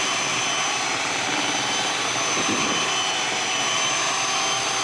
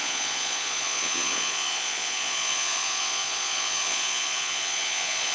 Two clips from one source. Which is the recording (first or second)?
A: first